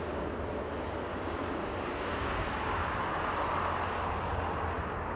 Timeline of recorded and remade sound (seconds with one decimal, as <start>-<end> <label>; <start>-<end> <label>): 0.0-1.1 recorded; 1.1-3.0 remade; 3.0-5.2 recorded